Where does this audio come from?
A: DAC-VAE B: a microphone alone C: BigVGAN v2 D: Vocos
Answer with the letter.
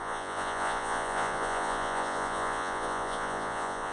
D